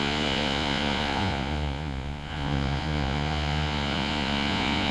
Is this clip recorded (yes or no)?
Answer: no